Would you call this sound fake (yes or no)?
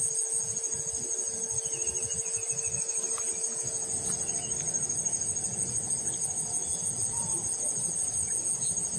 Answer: yes